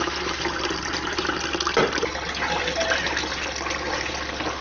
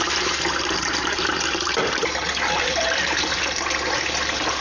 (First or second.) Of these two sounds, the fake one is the second